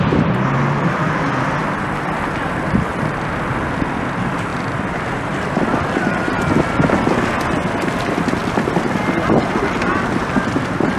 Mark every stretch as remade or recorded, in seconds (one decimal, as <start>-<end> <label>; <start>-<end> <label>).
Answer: 0.0-4.5 recorded; 4.5-6.9 remade; 6.9-8.4 recorded; 8.4-9.0 remade; 9.0-11.0 recorded